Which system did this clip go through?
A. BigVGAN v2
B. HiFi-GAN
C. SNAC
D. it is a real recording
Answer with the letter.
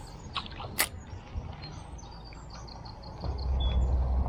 D